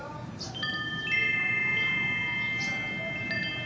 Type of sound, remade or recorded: recorded